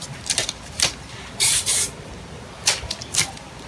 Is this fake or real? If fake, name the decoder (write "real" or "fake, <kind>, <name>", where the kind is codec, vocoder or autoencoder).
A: fake, vocoder, BigVGAN v2